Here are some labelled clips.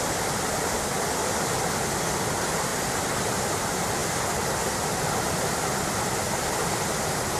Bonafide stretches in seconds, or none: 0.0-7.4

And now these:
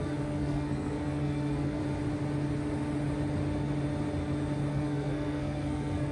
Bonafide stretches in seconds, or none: 1.8-4.7

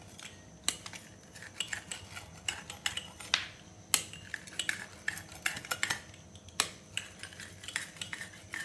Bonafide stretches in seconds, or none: 0.0-8.6

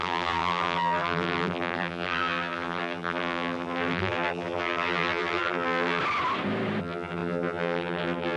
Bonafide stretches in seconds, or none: 6.0-6.8